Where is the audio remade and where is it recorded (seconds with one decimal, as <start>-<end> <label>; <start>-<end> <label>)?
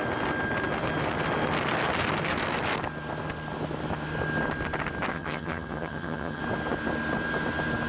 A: 0.0-5.1 recorded; 5.1-6.4 remade; 6.4-7.9 recorded